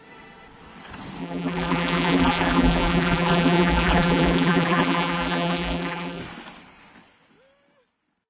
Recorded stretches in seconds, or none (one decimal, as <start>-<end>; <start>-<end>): 0.0-1.2; 6.2-8.3